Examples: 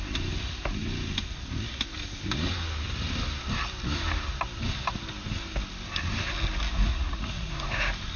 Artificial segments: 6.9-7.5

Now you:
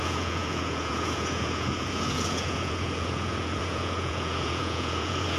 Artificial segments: 0.0-5.4

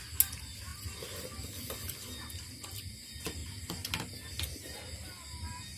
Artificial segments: none